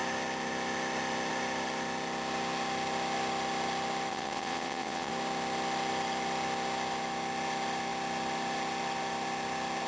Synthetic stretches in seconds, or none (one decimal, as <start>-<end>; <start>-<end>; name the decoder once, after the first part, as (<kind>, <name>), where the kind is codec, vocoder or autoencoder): 4.1-5.1 (vocoder, WaveNeXt)